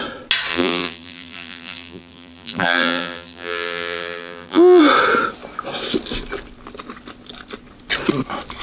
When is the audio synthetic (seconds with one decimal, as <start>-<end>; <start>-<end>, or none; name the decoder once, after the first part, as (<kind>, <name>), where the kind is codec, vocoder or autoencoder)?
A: 0.5-4.8 (vocoder, BigVGAN v2)